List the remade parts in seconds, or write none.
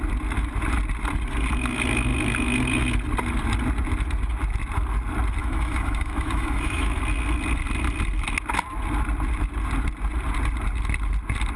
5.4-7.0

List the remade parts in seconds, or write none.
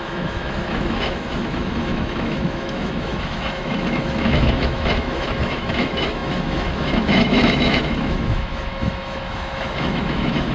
0.0-10.5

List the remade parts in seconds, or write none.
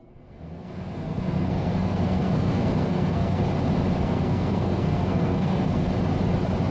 0.0-3.4; 4.0-5.9